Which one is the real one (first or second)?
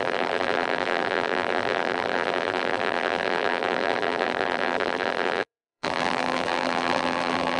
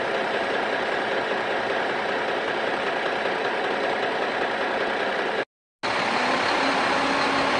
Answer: second